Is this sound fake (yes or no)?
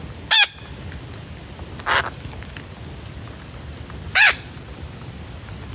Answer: no